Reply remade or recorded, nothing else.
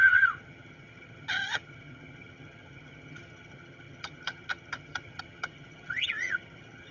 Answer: remade